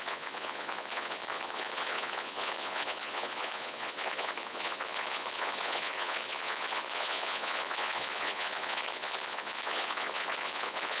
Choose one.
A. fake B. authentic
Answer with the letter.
A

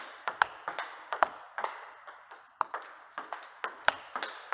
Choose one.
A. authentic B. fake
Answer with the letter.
A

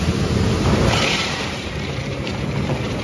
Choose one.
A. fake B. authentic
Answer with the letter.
A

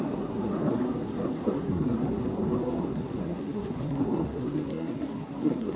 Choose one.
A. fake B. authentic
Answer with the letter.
A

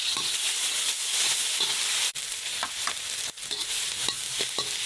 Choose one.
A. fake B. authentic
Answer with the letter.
B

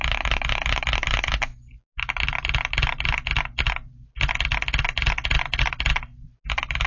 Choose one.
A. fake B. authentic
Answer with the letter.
B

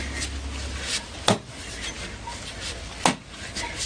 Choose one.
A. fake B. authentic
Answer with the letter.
B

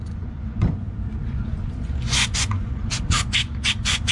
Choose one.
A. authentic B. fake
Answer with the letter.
B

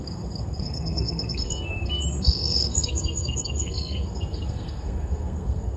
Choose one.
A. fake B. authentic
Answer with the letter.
A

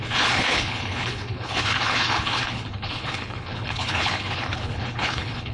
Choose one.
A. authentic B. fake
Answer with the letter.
B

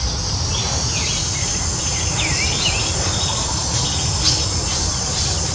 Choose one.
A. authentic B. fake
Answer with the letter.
A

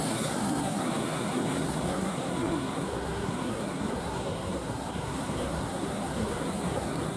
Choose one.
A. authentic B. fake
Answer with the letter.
B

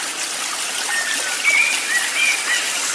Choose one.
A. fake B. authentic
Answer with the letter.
B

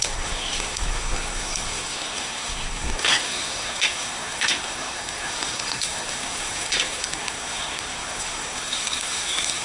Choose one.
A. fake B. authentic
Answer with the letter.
A